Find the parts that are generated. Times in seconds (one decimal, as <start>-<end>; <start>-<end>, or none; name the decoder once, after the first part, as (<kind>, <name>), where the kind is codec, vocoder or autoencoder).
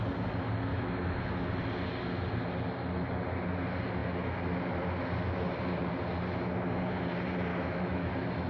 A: 0.7-1.3 (autoencoder, DAC-VAE); 7.5-8.1